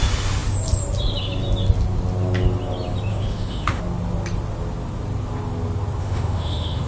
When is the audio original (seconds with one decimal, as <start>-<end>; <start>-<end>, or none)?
0.0-3.1; 3.8-6.0

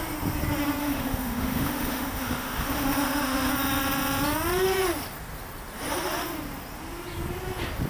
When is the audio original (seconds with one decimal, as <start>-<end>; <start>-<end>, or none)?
0.0-0.8; 3.5-7.9